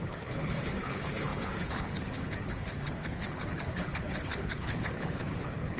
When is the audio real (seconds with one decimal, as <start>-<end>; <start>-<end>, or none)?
none